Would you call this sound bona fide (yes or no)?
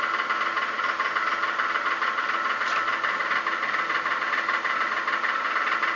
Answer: yes